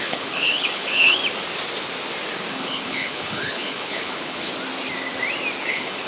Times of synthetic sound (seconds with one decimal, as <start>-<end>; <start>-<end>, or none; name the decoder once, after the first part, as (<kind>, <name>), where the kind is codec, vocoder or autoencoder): 0.0-1.2 (codec, HILCodec); 2.5-4.5; 5.6-6.1